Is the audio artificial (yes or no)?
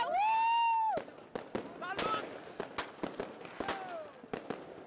no